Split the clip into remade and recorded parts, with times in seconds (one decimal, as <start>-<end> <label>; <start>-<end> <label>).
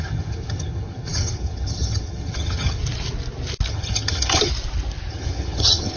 0.0-2.8 remade; 2.8-3.7 recorded; 3.7-4.5 remade; 4.5-5.1 recorded; 5.1-6.0 remade